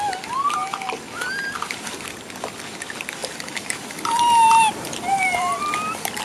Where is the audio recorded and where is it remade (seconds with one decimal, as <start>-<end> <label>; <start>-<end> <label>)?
0.0-0.6 recorded; 0.6-2.0 remade; 2.0-3.2 recorded; 3.2-5.6 remade; 5.6-6.2 recorded

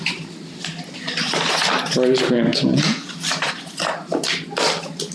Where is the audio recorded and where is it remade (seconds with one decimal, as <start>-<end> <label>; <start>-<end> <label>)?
0.0-2.5 recorded; 2.5-3.1 remade; 3.1-5.1 recorded

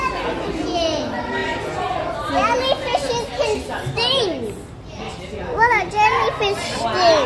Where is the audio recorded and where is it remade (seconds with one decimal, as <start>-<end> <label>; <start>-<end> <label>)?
0.0-7.3 recorded